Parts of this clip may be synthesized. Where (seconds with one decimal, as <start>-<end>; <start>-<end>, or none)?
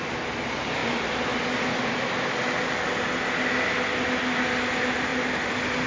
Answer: none